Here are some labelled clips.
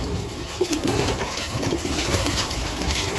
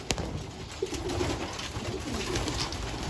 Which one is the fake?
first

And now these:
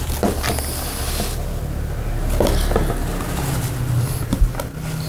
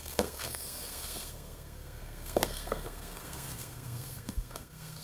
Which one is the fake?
second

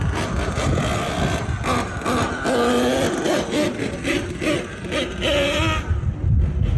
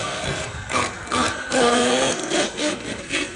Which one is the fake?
second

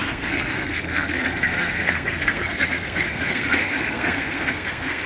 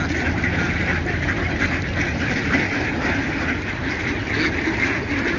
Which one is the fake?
first